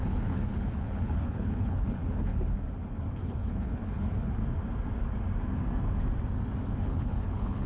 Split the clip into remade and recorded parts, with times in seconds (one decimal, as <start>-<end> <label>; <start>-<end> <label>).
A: 0.0-2.3 remade; 2.3-3.0 recorded; 3.0-4.4 remade; 4.4-6.8 recorded; 6.8-7.7 remade